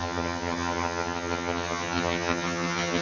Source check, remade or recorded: remade